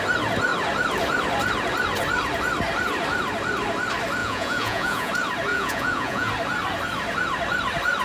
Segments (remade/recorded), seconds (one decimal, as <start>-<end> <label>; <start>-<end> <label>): 0.0-4.2 recorded; 4.2-5.1 remade; 5.1-5.5 recorded; 5.5-6.3 remade; 6.3-8.0 recorded